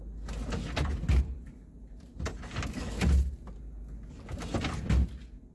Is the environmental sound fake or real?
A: real